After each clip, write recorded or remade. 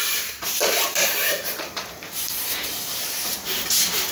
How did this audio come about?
remade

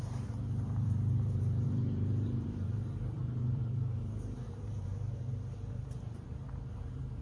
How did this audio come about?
remade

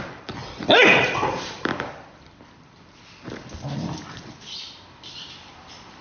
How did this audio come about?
remade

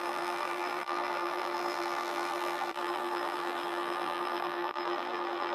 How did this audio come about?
remade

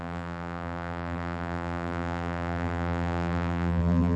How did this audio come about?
remade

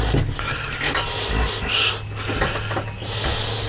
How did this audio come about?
recorded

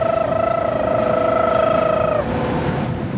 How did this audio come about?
recorded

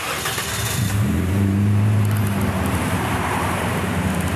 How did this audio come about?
remade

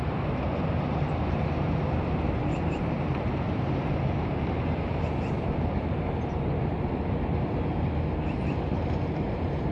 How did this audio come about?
remade